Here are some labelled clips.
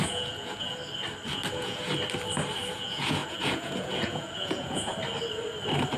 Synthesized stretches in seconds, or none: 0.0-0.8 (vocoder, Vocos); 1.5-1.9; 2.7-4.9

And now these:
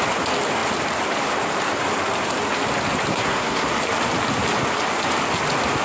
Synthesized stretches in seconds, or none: 3.1-3.7 (codec, SNAC)